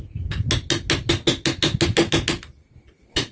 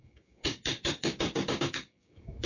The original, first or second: first